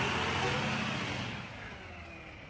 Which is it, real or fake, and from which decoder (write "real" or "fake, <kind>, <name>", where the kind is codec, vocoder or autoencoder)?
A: real